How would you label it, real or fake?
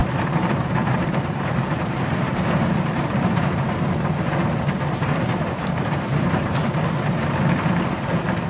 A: fake